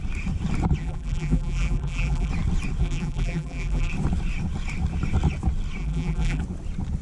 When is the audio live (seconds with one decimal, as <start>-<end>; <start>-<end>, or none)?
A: 0.0-0.8; 2.3-2.8; 3.9-5.8; 6.4-7.0